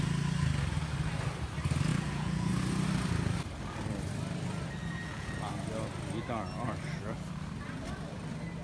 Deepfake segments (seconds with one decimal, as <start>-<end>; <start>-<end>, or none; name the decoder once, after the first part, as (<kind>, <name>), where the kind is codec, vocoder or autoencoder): 1.9-2.5 (vocoder, Vocos); 4.8-5.4